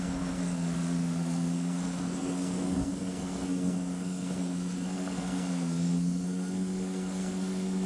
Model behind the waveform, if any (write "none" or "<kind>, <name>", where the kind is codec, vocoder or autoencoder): codec, SNAC